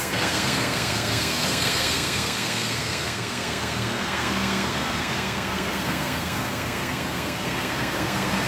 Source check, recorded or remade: remade